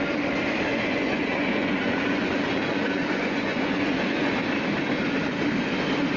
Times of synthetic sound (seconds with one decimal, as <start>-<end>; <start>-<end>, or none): 0.7-4.4